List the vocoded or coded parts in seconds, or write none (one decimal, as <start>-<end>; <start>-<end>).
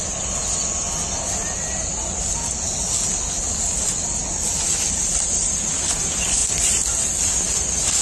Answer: none